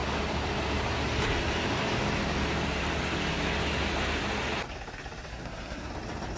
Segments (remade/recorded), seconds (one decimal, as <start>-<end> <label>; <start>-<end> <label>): 0.0-5.3 recorded; 5.3-5.9 remade; 5.9-6.4 recorded